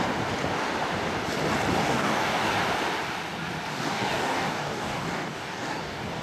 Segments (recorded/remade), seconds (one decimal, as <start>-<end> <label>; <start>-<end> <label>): 0.0-1.8 recorded; 1.8-2.5 remade; 2.5-3.7 recorded; 3.7-6.2 remade

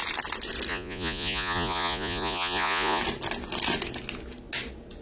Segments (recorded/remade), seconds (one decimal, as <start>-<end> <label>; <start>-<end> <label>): 0.0-0.7 recorded; 0.7-3.0 remade; 3.0-5.0 recorded

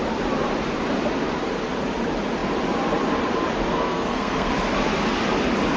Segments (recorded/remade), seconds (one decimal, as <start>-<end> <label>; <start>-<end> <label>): 0.0-3.7 recorded; 3.7-4.5 remade; 4.5-5.8 recorded

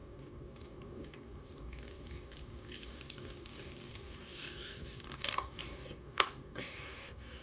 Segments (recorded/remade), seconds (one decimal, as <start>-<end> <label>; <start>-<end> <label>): 0.0-7.4 remade

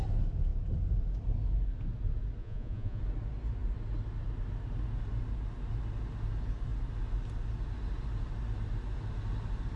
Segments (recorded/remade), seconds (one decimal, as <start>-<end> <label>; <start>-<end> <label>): 0.0-2.4 recorded; 2.4-3.0 remade; 3.0-9.8 recorded

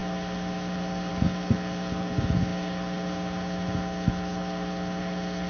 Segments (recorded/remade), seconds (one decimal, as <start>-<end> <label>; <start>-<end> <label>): 0.0-5.5 remade

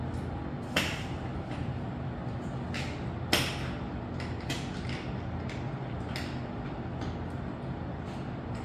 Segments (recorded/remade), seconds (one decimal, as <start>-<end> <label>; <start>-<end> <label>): 0.0-0.6 recorded; 0.6-1.9 remade; 1.9-8.6 recorded